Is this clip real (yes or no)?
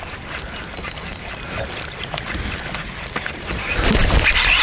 yes